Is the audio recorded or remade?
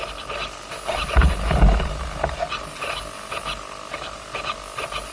recorded